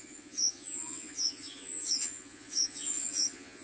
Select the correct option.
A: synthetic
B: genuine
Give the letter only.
A